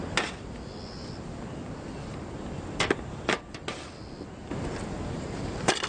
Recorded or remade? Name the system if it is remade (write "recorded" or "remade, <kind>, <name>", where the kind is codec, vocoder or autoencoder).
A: recorded